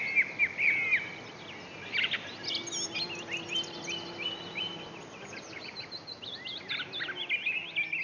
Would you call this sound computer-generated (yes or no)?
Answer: no